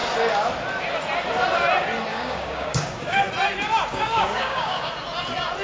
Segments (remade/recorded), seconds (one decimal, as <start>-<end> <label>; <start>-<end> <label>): 0.0-2.1 recorded; 2.1-3.3 remade; 3.3-3.9 recorded; 3.9-4.9 remade; 4.9-5.6 recorded